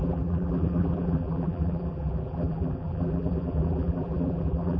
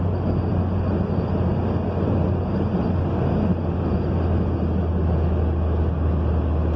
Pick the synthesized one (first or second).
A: first